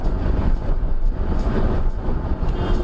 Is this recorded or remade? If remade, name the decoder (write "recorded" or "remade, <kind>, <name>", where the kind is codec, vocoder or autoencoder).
remade, vocoder, Vocos